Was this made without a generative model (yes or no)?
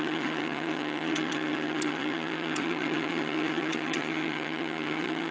no